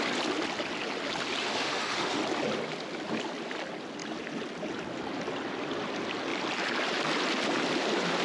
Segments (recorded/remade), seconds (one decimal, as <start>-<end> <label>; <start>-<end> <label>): 0.0-1.4 recorded; 1.4-2.2 remade; 2.2-8.2 recorded